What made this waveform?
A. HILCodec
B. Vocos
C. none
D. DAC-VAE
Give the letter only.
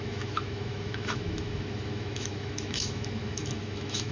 D